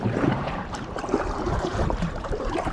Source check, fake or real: fake